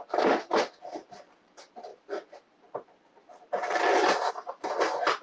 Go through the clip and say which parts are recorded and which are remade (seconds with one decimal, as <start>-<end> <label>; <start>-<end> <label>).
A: 0.0-1.9 recorded; 1.9-4.3 remade; 4.3-5.2 recorded